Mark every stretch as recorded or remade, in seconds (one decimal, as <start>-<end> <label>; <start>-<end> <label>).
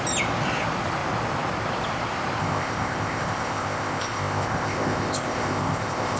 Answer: 0.0-2.4 recorded; 2.4-6.2 remade